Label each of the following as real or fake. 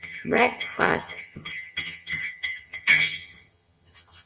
fake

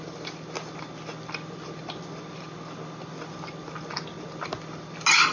real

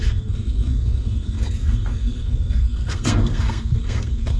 fake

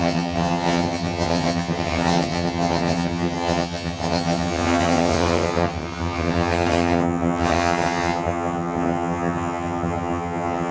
fake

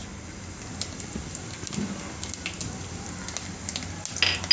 real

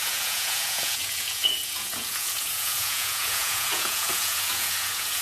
fake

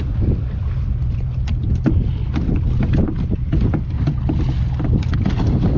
real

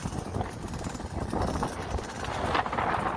real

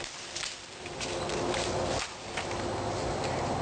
real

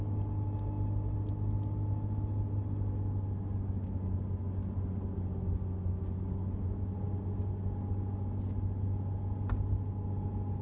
real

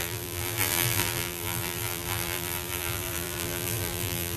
fake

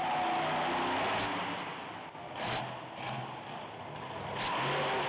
real